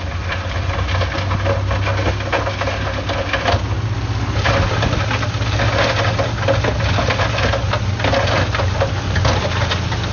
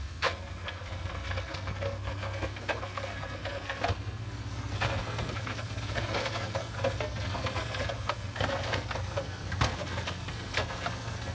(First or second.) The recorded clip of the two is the first